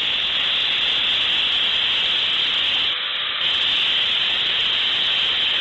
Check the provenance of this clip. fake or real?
real